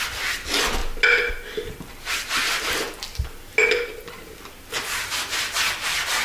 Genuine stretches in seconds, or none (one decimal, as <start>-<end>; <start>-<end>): 0.0-6.2